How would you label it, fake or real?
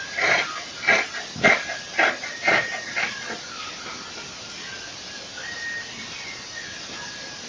real